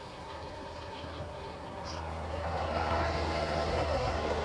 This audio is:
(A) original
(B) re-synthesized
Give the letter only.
B